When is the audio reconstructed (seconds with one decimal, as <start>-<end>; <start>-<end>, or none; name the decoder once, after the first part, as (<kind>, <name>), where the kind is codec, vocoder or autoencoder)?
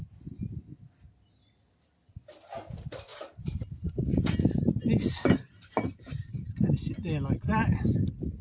3.1-4.0 (vocoder, BigVGAN v2); 5.2-6.7